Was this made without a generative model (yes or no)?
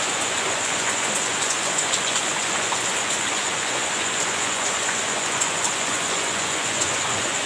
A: no